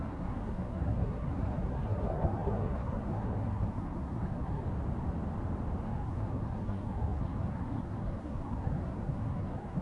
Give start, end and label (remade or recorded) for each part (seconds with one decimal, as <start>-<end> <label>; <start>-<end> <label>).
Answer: 0.0-4.6 remade; 4.6-5.8 recorded; 5.8-9.8 remade